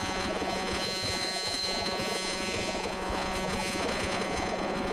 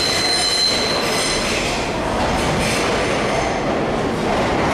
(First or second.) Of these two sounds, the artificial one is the first